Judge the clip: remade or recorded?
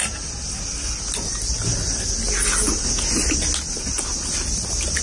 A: recorded